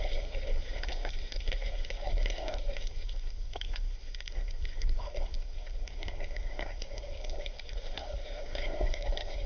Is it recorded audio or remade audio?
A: remade